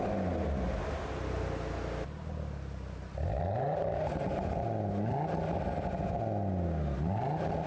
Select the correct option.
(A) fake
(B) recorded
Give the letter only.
B